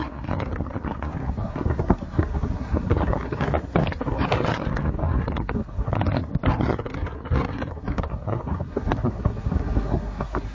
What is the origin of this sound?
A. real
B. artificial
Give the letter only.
B